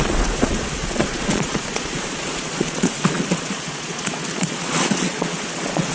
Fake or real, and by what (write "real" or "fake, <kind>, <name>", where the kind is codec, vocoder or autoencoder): fake, vocoder, Vocos